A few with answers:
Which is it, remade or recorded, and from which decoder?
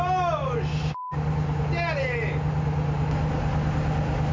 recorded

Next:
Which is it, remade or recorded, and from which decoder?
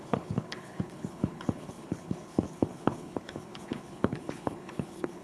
remade, codec, HILCodec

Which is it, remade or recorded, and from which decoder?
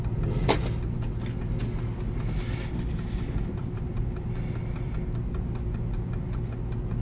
recorded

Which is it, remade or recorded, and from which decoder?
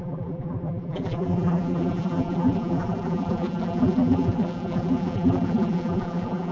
remade, vocoder, BigVGAN v2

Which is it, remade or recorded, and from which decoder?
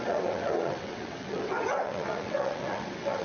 remade, vocoder, WaveNeXt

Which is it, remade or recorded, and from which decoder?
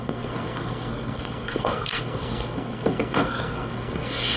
remade, codec, SNAC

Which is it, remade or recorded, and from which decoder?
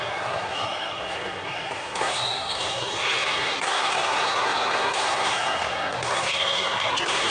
remade, codec, SNAC